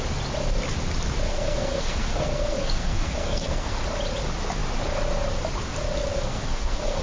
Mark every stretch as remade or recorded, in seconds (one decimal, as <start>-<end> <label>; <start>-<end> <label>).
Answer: 0.0-1.3 recorded; 1.3-3.8 remade; 3.8-6.1 recorded; 6.1-7.0 remade